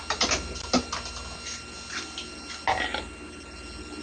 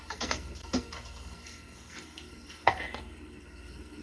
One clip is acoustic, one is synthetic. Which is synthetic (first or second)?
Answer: second